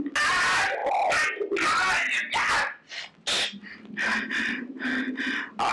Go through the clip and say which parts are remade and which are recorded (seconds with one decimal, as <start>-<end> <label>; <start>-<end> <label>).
0.0-5.7 recorded